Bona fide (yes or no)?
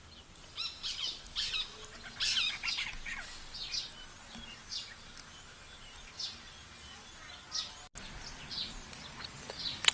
yes